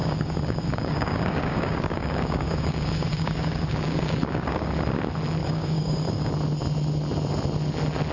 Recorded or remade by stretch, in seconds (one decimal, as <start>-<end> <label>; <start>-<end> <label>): 0.0-4.7 remade; 4.7-5.4 recorded; 5.4-6.3 remade; 6.3-8.1 recorded